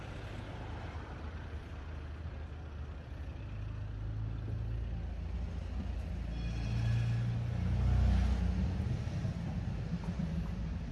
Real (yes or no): yes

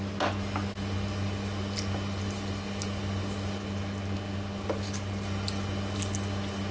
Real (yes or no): yes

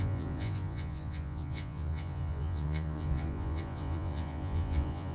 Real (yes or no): no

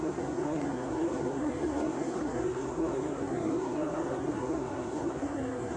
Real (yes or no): no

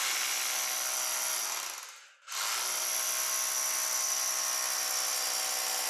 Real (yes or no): yes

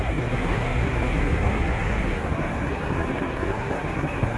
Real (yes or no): no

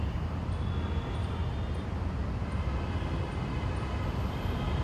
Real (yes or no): yes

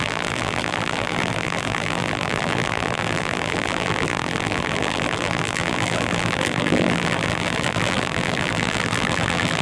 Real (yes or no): no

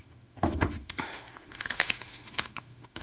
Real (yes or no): no